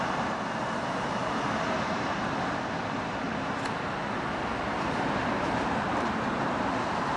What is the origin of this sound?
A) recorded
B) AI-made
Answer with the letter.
B